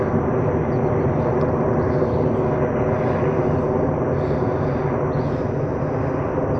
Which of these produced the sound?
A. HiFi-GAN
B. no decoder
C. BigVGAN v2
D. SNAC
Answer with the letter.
B